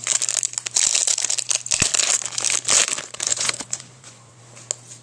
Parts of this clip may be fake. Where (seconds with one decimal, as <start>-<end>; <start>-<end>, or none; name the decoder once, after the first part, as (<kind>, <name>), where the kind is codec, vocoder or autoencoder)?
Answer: 3.3-4.4 (vocoder, Vocos)